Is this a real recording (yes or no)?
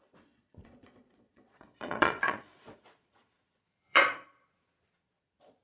no